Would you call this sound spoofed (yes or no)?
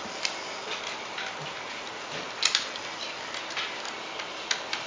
no